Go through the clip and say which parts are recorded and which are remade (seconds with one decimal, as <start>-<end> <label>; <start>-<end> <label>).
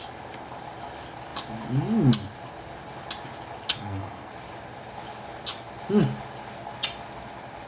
0.0-3.7 recorded; 3.7-4.3 remade; 4.3-7.7 recorded